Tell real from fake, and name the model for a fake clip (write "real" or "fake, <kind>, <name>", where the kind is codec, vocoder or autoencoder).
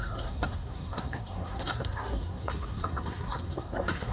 fake, codec, SNAC